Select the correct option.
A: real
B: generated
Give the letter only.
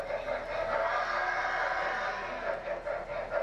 A